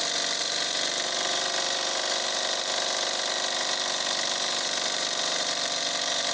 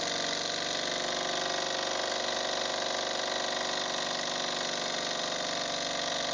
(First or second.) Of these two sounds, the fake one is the first